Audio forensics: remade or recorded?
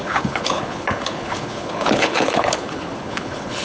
remade